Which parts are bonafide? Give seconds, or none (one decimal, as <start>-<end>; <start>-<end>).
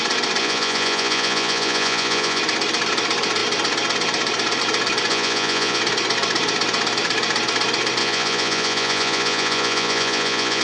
0.0-0.4; 2.4-5.1; 5.8-8.0